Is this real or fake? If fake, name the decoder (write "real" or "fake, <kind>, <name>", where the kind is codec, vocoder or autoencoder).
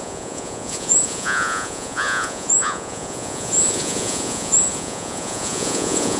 fake, vocoder, Vocos